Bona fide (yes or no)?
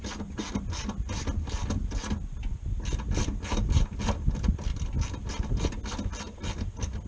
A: yes